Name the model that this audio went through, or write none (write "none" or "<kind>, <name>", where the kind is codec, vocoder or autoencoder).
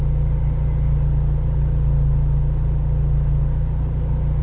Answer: none